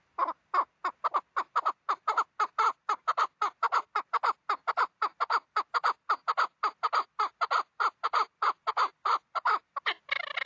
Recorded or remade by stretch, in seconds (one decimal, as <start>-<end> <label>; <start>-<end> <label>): 0.0-10.4 recorded